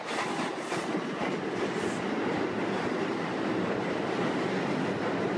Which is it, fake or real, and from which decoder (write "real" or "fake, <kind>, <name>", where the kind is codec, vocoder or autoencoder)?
real